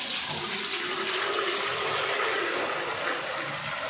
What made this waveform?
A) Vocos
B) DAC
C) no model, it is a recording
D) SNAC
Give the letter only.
C